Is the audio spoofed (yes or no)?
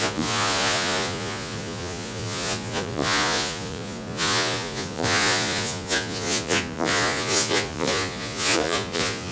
yes